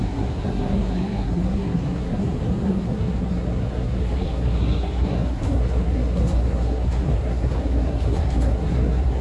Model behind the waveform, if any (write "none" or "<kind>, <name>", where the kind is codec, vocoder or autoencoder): codec, SNAC